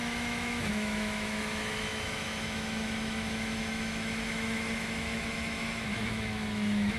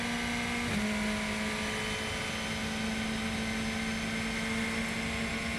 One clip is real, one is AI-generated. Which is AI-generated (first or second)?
first